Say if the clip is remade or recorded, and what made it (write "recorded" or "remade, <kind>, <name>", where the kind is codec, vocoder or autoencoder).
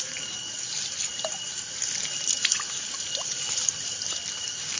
recorded